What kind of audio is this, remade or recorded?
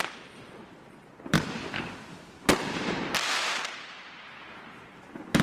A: remade